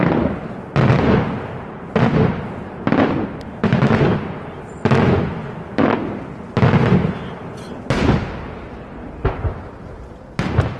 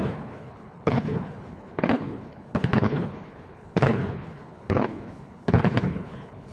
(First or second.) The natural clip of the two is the first